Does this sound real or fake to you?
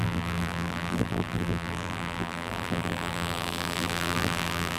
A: fake